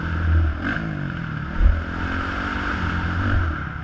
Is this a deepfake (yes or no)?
no